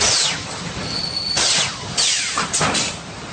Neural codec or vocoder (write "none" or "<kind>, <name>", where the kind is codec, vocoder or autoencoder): vocoder, BigVGAN v2